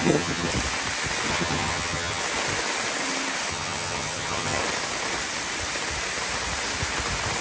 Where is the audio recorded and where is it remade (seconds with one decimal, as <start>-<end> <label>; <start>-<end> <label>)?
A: 0.0-0.5 remade; 0.5-1.3 recorded; 1.3-2.2 remade; 2.2-3.5 recorded; 3.5-4.6 remade; 4.6-7.4 recorded